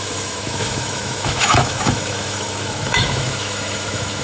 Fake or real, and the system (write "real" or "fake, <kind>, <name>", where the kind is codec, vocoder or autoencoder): fake, autoencoder, DAC-VAE